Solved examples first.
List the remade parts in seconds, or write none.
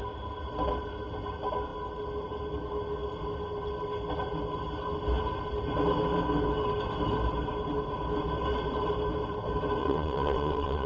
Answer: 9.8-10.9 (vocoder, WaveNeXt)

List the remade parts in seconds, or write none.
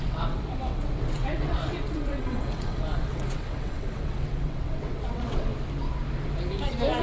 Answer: 0.0-5.5 (vocoder, WaveNeXt)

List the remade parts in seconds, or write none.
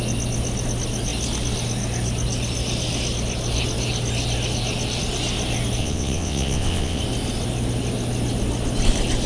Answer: 5.8-7.0 (vocoder, WaveNeXt)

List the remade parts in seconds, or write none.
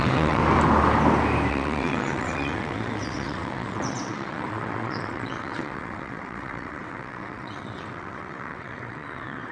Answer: 0.0-0.4 (vocoder, WaveNeXt); 1.5-9.5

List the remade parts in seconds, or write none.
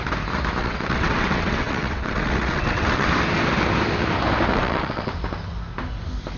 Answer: 0.6-3.1 (vocoder, WaveNeXt); 4.5-5.1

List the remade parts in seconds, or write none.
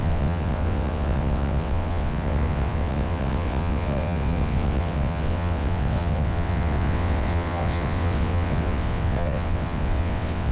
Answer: 0.0-10.5 (vocoder, WaveNeXt)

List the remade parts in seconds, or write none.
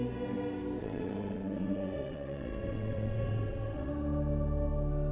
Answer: 0.8-3.9 (vocoder, WaveNeXt)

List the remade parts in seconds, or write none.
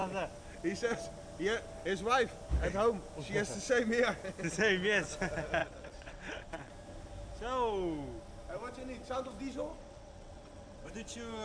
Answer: 5.6-6.7 (vocoder, WaveNeXt); 9.7-10.9